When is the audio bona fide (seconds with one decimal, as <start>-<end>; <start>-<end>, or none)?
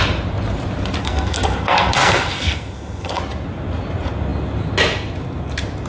0.0-1.0; 3.2-5.9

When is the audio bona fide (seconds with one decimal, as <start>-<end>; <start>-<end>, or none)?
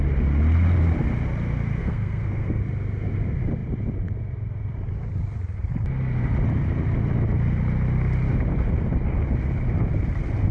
0.0-1.8; 2.6-10.5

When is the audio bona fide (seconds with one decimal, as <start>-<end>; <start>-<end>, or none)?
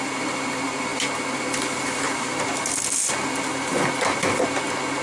0.0-5.0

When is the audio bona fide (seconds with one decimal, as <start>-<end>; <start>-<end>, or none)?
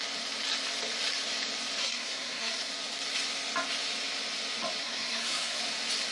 0.0-1.8; 2.7-4.8; 5.6-6.1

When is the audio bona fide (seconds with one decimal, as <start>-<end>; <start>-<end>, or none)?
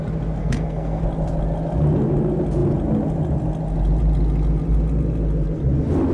0.0-0.4; 1.0-6.1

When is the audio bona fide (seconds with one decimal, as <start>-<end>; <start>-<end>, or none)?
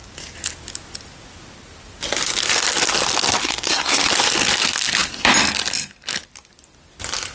0.0-3.4; 4.1-7.3